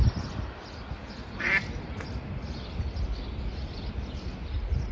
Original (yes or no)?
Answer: yes